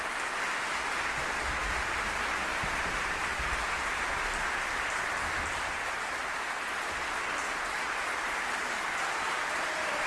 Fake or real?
real